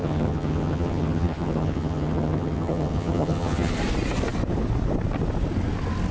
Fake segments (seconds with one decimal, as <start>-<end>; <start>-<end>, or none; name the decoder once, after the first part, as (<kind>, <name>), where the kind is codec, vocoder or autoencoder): 0.0-3.7 (vocoder, HiFi-GAN)